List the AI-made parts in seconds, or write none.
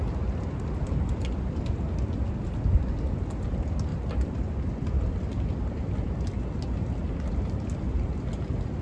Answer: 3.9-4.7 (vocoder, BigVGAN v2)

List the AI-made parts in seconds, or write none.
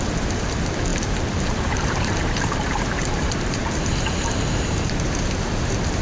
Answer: 0.0-6.0 (vocoder, BigVGAN v2)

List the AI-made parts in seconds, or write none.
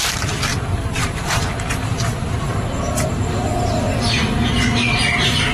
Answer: 0.0-3.5 (vocoder, BigVGAN v2); 5.1-5.5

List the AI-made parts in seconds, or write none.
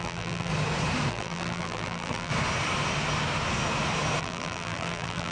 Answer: 0.0-0.5 (vocoder, BigVGAN v2); 1.1-2.3; 4.2-5.3